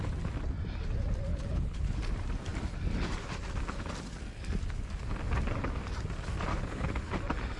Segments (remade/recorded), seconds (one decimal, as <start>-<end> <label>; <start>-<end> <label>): 0.0-1.3 recorded; 1.3-2.0 remade; 2.0-6.5 recorded; 6.5-7.1 remade; 7.1-7.6 recorded